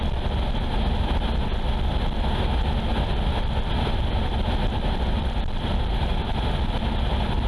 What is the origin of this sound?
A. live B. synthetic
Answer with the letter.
A